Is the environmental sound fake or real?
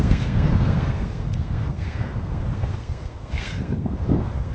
fake